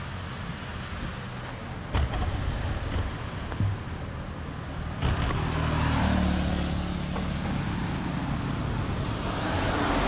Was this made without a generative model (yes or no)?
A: yes